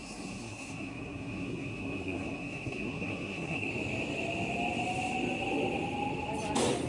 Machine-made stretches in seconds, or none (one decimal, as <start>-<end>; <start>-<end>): 0.0-3.7